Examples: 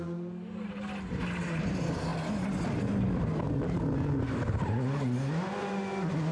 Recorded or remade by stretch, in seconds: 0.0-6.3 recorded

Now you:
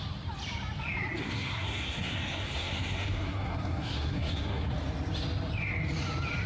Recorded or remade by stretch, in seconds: 0.0-1.2 recorded; 1.2-4.7 remade; 4.7-6.5 recorded